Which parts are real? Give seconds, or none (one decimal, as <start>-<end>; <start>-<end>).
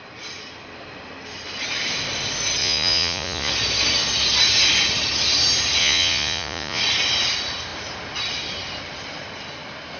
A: 0.0-2.6; 3.5-5.8; 6.8-10.0